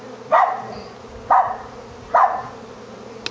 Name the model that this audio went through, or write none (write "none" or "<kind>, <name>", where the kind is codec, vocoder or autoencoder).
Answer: none